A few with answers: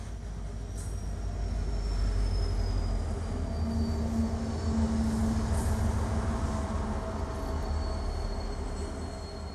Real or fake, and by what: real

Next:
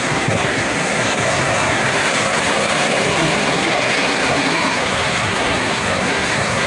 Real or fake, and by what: fake, codec, SNAC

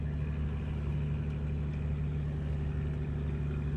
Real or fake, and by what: real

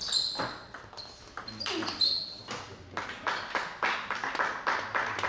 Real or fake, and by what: real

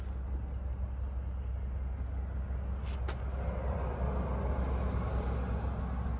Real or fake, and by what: real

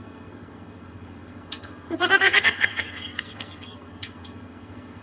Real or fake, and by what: fake, codec, SNAC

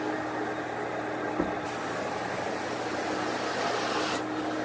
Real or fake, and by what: real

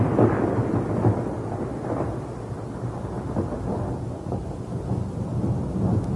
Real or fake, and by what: real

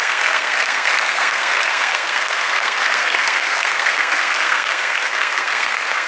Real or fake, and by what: fake, codec, SNAC